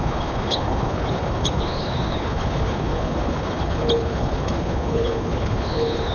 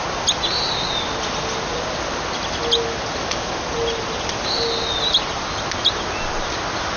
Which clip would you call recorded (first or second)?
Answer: second